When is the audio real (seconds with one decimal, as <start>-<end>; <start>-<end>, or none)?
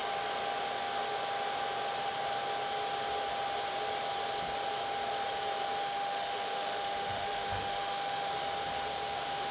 0.0-5.8; 8.3-9.5